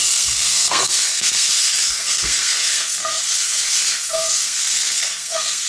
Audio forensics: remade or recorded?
remade